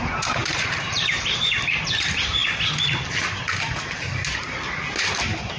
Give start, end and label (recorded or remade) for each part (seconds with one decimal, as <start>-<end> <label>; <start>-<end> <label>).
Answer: 0.0-2.4 remade; 2.4-3.8 recorded; 3.8-5.6 remade

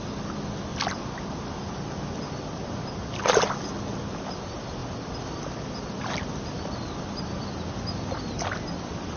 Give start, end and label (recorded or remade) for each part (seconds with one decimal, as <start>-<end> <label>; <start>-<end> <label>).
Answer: 0.0-9.2 recorded

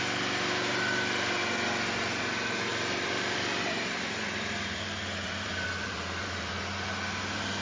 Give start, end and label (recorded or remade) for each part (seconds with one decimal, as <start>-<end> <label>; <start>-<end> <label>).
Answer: 0.0-2.7 recorded; 2.7-6.6 remade; 6.6-7.6 recorded

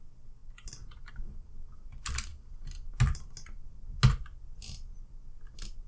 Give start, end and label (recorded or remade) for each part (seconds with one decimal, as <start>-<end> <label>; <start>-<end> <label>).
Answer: 0.0-0.4 recorded; 0.4-1.1 remade; 1.1-5.9 recorded

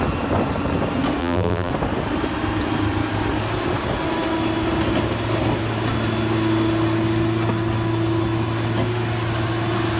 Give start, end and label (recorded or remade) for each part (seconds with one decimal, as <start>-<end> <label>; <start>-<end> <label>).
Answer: 0.0-1.2 recorded; 1.2-1.7 remade; 1.7-10.0 recorded

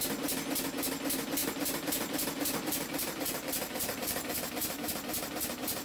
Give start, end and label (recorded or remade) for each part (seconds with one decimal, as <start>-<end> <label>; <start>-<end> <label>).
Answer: 0.0-1.4 recorded; 1.4-4.9 remade; 4.9-5.8 recorded